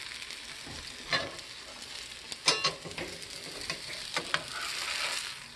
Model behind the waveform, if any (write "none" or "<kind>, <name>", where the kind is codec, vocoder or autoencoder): none